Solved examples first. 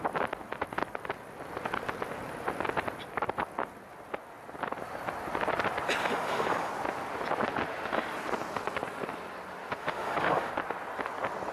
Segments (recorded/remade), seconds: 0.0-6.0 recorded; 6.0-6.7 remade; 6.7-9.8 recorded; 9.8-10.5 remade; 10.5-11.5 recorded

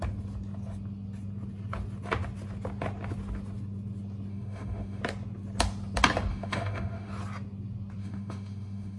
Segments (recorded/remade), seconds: 0.0-4.3 recorded; 4.3-5.0 remade; 5.0-6.3 recorded; 6.3-7.1 remade; 7.1-8.0 recorded; 8.0-9.0 remade

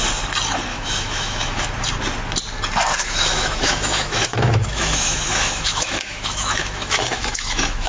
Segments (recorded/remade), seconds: 0.0-0.7 recorded; 0.7-1.6 remade; 1.6-3.0 recorded; 3.0-7.9 remade

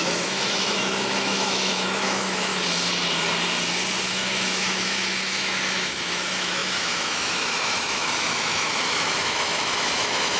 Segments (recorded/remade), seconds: 0.0-2.5 remade; 2.5-4.1 recorded; 4.1-10.4 remade

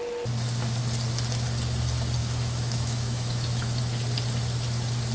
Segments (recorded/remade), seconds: 0.0-2.2 recorded; 2.2-3.8 remade; 3.8-5.1 recorded

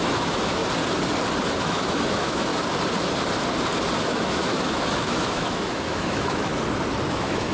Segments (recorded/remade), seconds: 0.0-0.6 remade; 0.6-1.6 recorded; 1.6-2.5 remade; 2.5-4.0 recorded; 4.0-6.5 remade; 6.5-7.1 recorded; 7.1-7.5 remade

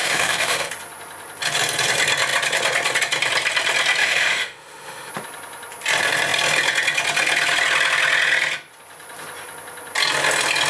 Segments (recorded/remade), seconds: 0.0-0.7 remade; 0.7-4.0 recorded; 4.0-5.1 remade; 5.1-10.7 recorded

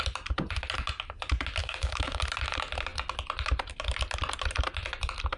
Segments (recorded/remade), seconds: 0.0-1.6 recorded; 1.6-2.2 remade; 2.2-5.4 recorded